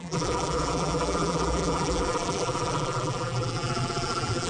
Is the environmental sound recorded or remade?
remade